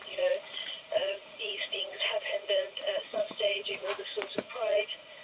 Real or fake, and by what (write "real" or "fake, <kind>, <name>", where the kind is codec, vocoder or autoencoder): fake, vocoder, Vocos